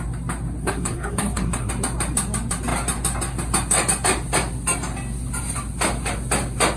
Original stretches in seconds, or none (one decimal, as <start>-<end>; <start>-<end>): 0.0-0.6; 1.7-6.8